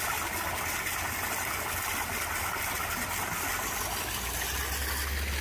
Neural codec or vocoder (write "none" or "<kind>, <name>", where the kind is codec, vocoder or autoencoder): none